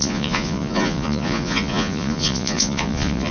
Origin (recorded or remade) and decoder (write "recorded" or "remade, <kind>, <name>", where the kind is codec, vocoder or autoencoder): remade, vocoder, Vocos